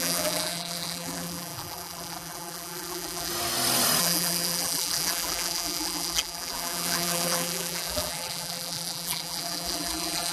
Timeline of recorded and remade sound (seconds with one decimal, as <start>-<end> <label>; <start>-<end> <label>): 0.0-3.3 remade; 3.3-4.0 recorded; 4.0-10.3 remade